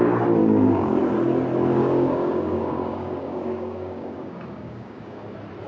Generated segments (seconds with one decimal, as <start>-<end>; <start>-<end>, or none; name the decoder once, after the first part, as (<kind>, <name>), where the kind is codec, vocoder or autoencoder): 0.4-1.0 (codec, DAC); 1.8-5.2

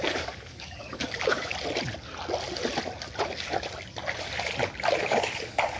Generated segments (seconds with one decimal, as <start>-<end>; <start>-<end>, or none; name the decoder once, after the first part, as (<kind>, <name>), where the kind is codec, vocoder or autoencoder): 0.0-1.5 (codec, DAC); 5.0-5.8

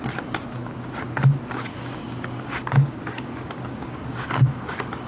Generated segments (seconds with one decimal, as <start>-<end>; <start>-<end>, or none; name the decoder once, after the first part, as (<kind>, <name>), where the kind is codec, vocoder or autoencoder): 1.7-5.1 (codec, DAC)

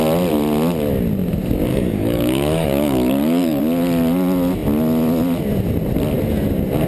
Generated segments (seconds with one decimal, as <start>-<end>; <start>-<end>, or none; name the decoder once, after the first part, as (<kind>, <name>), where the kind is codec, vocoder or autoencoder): 1.7-3.6 (codec, DAC)

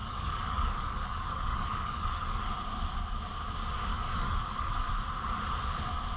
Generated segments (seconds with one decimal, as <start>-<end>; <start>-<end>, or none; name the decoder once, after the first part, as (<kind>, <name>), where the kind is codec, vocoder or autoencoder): 0.0-2.5 (codec, DAC); 3.9-4.9